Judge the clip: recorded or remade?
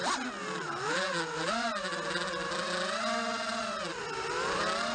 recorded